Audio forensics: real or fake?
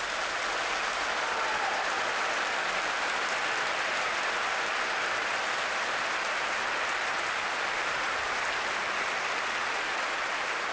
real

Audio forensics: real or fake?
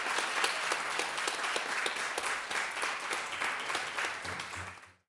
real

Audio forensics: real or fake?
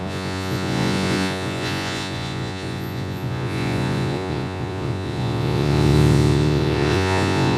fake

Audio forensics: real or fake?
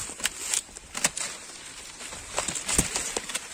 real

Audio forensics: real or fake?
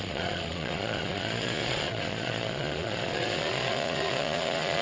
fake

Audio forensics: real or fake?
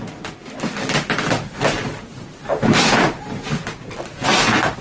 real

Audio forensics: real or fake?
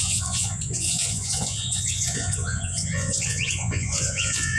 fake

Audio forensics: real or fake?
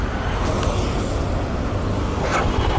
real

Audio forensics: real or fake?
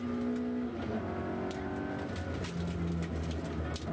real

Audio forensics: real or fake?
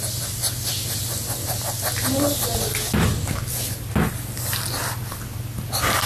real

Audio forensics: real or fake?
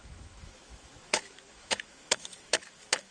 fake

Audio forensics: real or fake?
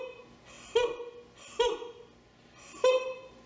real